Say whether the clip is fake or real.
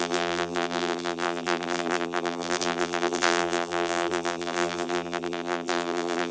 fake